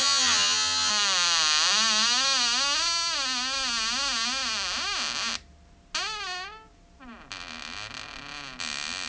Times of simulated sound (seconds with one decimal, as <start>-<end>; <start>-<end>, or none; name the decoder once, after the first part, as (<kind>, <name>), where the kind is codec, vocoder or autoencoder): 0.0-0.9 (vocoder, HiFi-GAN)